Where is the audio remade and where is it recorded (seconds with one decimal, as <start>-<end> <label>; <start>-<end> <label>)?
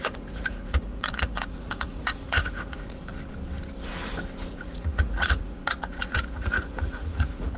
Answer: 0.0-3.1 remade; 3.1-4.5 recorded; 4.5-7.6 remade